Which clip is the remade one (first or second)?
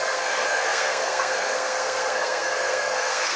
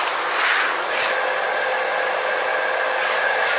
first